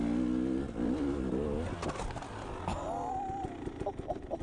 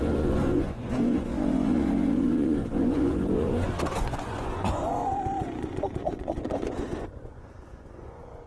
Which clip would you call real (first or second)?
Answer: first